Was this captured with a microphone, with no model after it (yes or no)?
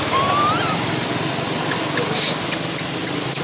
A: yes